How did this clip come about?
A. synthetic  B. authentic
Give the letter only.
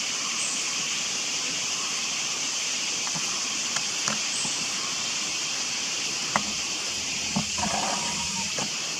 A